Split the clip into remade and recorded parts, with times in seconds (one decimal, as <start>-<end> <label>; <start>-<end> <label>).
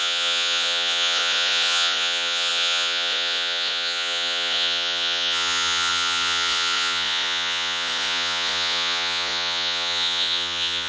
0.0-10.9 remade